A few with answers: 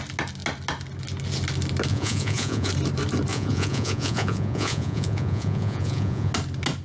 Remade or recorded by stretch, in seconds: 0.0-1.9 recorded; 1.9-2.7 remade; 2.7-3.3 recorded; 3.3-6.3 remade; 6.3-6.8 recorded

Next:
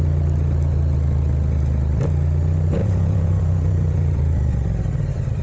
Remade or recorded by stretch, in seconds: 0.0-2.8 recorded; 2.8-4.5 remade; 4.5-5.4 recorded

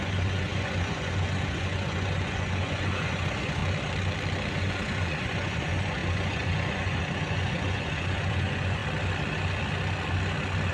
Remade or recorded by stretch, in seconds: 0.0-3.6 remade; 3.6-4.5 recorded; 4.5-8.8 remade; 8.8-10.7 recorded

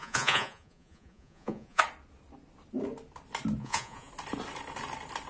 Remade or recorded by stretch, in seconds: 0.0-1.8 remade; 1.8-3.6 recorded; 3.6-4.1 remade; 4.1-5.3 recorded

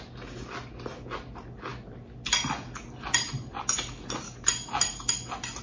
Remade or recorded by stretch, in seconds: 0.0-5.6 recorded

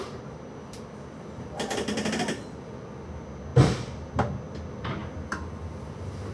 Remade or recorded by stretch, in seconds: 0.0-6.3 recorded

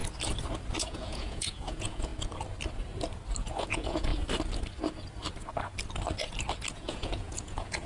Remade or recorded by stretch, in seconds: 0.0-0.8 recorded; 0.8-2.1 remade; 2.1-3.4 recorded; 3.4-4.1 remade; 4.1-6.7 recorded; 6.7-7.9 remade

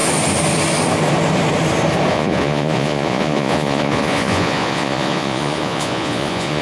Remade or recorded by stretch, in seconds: 0.0-2.1 recorded; 2.1-6.6 remade